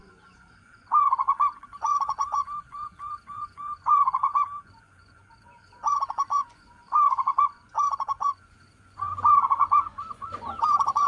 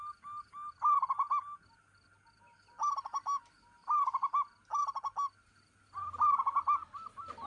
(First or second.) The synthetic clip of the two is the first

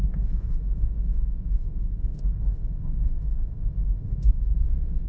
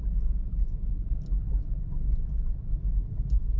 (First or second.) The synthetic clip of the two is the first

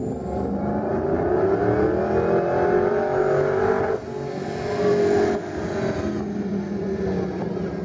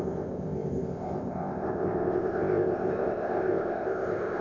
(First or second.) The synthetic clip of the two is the second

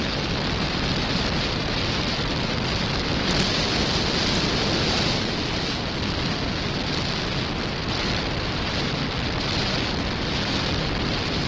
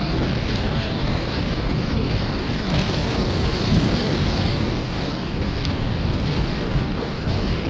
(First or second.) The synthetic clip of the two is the second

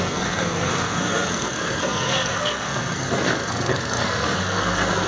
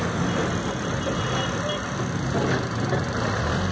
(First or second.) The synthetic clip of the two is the first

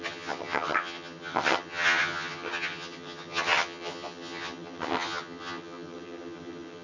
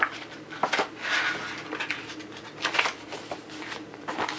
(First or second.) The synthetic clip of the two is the first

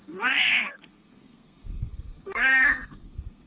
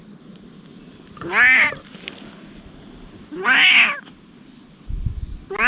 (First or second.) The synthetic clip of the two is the first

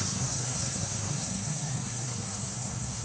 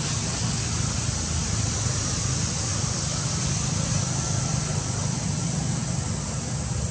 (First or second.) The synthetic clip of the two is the first